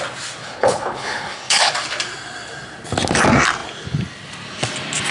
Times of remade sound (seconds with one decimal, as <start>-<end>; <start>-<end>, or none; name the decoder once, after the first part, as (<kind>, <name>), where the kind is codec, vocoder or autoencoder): 0.4-1.7 (codec, HILCodec)